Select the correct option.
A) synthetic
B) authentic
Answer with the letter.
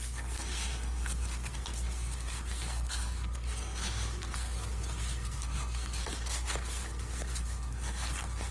A